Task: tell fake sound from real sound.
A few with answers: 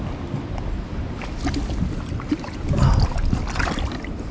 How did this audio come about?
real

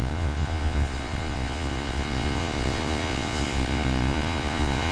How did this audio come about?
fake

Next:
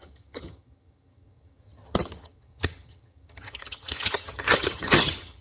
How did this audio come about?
fake